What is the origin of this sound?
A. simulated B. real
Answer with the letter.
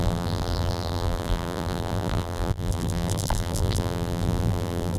A